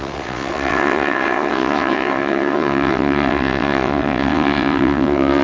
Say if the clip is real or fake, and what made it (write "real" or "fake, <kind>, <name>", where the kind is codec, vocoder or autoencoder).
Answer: fake, vocoder, WaveNeXt